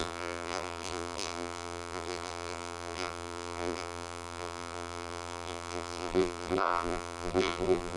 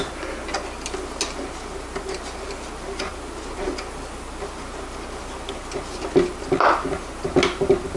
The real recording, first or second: second